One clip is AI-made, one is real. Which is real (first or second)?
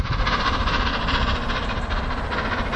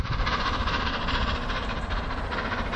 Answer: first